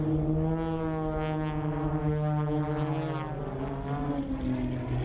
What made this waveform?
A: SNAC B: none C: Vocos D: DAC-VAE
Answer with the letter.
B